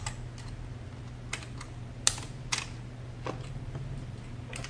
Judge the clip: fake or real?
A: real